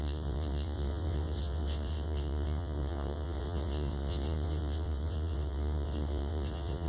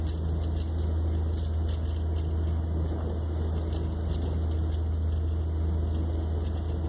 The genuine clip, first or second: second